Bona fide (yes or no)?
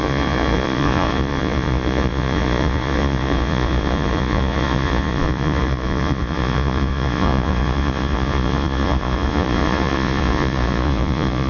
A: no